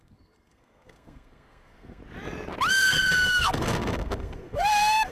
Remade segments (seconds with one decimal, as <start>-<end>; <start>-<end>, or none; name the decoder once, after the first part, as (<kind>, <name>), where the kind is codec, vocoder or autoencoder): 0.0-2.0 (codec, SNAC); 2.7-5.1